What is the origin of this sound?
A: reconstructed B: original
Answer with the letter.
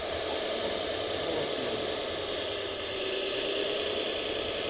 B